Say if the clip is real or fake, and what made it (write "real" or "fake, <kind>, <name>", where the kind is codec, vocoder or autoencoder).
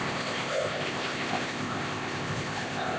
fake, codec, ZipCodec